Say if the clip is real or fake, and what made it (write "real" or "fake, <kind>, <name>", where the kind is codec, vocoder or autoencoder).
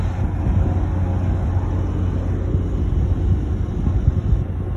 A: real